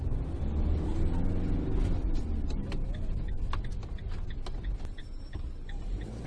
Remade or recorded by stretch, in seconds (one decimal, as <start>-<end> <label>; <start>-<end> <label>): 0.0-6.3 recorded